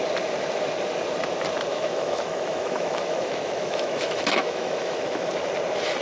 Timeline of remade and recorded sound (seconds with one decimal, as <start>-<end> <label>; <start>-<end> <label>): 0.0-1.7 recorded; 1.7-5.3 remade; 5.3-6.0 recorded